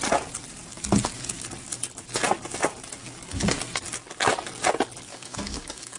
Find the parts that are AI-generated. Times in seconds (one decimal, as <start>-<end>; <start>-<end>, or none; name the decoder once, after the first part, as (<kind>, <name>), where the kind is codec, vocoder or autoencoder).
5.1-6.0 (codec, DAC)